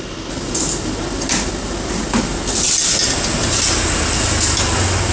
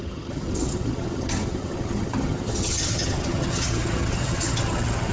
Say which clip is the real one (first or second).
first